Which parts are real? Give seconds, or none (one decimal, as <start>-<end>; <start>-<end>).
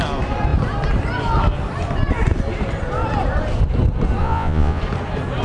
0.0-4.2; 4.8-5.4